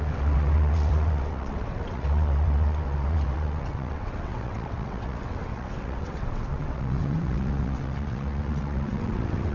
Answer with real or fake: fake